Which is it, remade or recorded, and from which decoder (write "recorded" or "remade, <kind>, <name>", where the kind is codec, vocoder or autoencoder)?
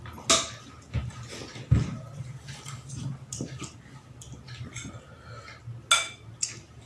recorded